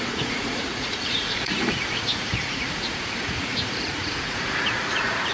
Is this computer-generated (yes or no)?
yes